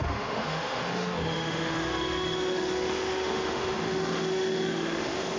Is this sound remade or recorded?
remade